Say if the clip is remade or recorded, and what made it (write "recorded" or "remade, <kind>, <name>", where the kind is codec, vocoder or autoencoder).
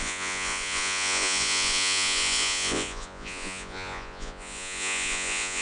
remade, vocoder, Vocos